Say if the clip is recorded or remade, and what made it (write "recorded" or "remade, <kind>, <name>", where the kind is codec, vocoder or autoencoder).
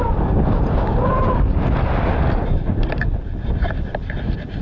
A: recorded